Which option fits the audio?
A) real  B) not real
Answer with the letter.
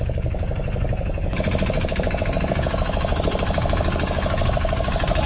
B